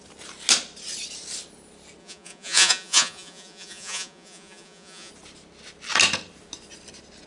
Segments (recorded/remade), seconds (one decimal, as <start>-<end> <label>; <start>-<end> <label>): 0.0-2.0 recorded; 2.0-5.1 remade; 5.1-7.3 recorded